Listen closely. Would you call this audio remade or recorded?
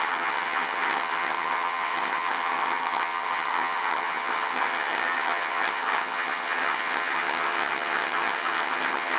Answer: remade